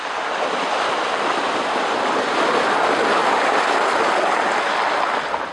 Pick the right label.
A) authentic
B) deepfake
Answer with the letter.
A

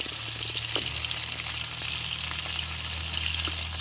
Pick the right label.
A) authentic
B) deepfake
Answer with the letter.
A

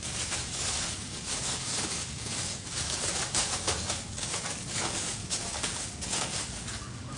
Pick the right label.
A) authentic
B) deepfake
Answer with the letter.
B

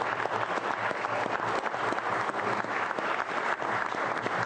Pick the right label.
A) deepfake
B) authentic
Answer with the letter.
B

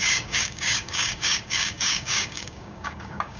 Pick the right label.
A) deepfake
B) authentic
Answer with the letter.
A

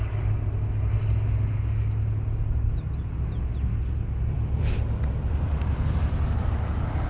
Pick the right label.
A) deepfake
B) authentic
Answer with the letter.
B